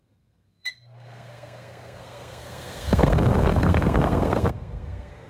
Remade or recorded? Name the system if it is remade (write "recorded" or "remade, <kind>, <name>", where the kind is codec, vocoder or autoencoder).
remade, codec, SNAC